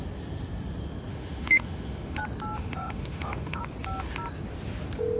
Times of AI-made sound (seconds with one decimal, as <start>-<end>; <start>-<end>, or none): 1.1-2.2; 2.6-3.6